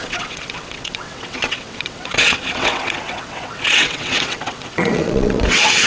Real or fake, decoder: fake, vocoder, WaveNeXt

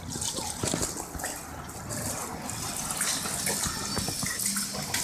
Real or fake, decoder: real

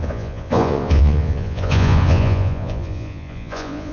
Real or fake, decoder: fake, vocoder, Vocos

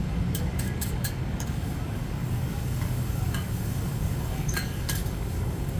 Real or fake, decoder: fake, codec, DAC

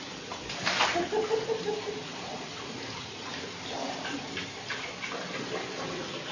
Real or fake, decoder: real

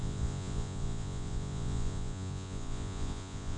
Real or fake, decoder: fake, vocoder, Vocos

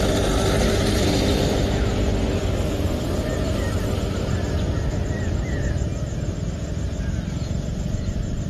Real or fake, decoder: real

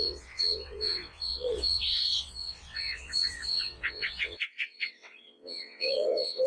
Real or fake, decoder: fake, vocoder, WaveNeXt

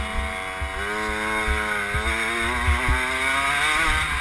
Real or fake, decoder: real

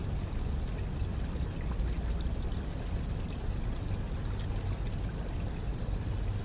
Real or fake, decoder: real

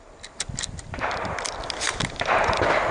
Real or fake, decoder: real